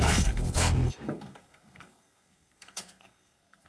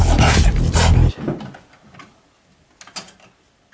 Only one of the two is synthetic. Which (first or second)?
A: first